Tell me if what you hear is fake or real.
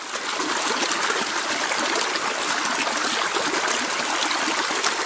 real